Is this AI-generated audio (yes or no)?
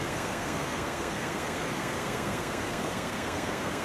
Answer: yes